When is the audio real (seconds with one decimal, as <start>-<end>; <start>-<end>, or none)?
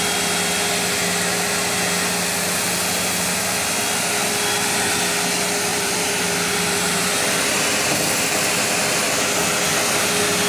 0.0-5.7; 7.1-10.5